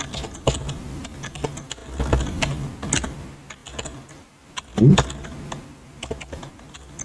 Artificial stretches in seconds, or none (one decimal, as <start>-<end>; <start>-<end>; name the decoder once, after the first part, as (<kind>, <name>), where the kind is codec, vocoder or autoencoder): none